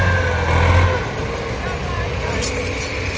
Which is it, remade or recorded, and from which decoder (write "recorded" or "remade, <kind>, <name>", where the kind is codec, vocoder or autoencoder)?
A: recorded